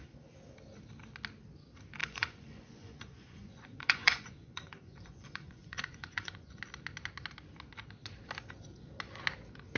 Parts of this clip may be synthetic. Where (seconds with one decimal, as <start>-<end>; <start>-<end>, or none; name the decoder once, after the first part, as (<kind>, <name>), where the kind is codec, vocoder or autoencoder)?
2.0-6.6 (vocoder, Vocos)